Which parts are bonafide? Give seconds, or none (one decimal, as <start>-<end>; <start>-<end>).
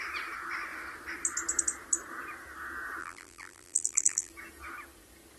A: 0.0-3.0; 4.3-5.4